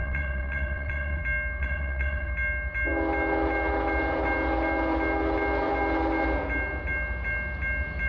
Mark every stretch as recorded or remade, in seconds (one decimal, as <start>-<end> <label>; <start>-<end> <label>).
0.0-1.2 remade; 1.2-1.6 recorded; 1.6-2.3 remade; 2.3-8.1 recorded